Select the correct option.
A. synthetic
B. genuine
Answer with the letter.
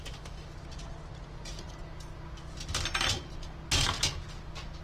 B